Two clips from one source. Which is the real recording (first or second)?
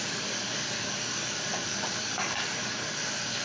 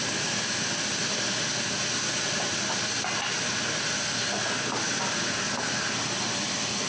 second